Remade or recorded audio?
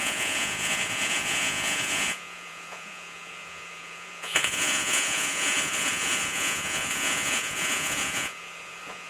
remade